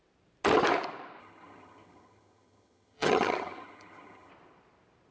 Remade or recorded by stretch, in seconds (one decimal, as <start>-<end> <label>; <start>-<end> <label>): 0.0-1.2 recorded; 1.2-4.3 remade; 4.3-5.1 recorded